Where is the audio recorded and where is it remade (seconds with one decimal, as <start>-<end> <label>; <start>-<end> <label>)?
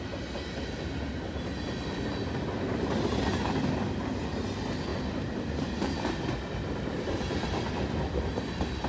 0.0-4.9 recorded; 4.9-8.3 remade; 8.3-8.9 recorded